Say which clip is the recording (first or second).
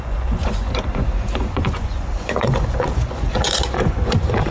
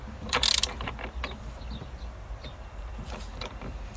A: second